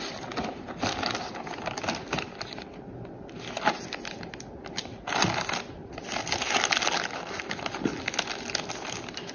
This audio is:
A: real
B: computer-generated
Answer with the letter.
A